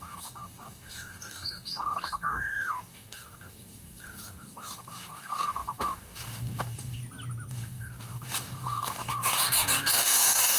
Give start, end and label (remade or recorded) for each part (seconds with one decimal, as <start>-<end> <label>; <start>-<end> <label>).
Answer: 0.0-7.0 remade; 7.0-7.5 recorded; 7.5-10.6 remade